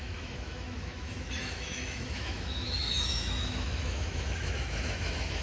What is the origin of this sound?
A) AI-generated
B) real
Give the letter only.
A